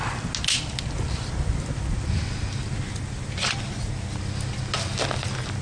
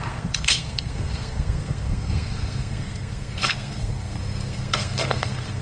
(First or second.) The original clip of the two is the first